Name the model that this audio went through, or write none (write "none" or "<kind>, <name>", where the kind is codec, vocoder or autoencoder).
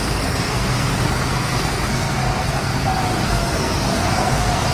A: codec, SNAC